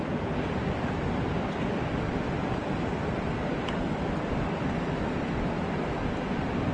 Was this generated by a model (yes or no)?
no